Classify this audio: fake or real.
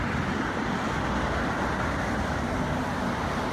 real